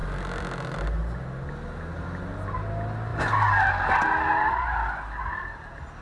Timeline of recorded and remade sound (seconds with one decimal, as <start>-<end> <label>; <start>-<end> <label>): 0.0-6.0 recorded